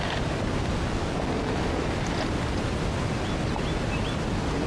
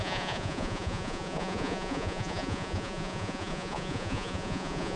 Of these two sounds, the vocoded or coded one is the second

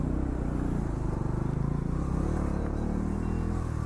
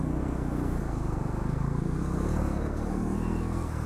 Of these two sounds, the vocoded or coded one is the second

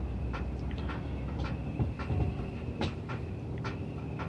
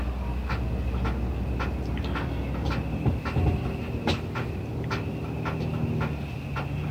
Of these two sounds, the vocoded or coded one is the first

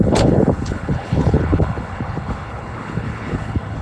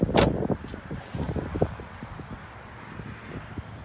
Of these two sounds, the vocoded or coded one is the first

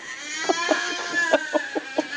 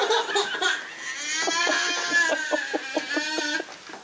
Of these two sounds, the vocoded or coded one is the first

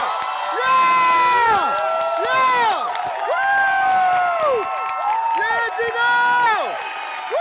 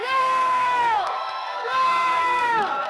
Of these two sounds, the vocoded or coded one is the second